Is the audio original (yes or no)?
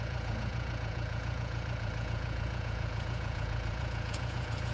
no